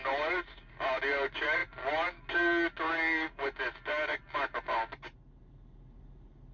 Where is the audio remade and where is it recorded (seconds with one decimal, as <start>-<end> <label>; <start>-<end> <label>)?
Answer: 0.0-6.5 recorded